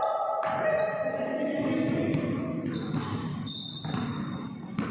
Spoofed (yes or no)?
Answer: no